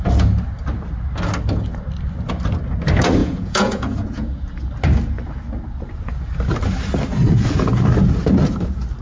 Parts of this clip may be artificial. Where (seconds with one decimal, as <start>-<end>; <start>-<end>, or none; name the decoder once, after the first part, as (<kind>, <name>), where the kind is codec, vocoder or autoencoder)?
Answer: 3.2-4.4 (vocoder, Vocos)